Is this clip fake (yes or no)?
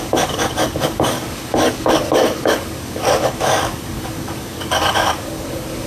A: yes